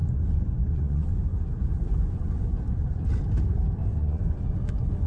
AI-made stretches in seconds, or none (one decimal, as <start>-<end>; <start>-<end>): 0.0-3.1; 3.9-5.1